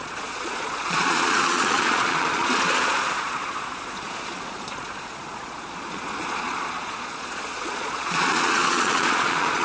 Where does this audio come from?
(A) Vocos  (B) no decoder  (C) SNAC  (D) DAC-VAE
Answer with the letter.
A